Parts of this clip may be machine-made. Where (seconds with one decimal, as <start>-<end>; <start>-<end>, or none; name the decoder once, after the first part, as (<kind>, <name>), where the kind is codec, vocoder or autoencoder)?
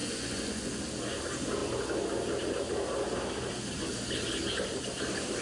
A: 0.0-0.8 (vocoder, Vocos)